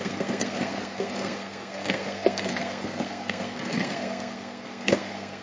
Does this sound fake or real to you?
fake